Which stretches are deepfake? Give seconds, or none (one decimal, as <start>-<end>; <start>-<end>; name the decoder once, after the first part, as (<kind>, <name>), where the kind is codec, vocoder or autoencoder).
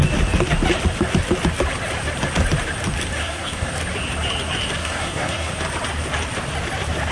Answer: 3.2-3.7 (codec, SNAC); 4.8-5.5